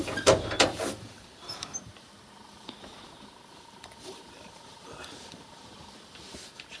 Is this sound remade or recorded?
remade